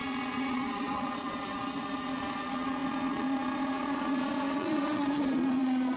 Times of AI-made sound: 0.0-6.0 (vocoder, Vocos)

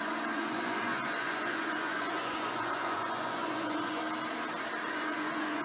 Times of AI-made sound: 0.0-4.0 (vocoder, Vocos); 4.9-5.6